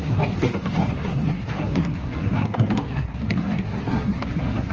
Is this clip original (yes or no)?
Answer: no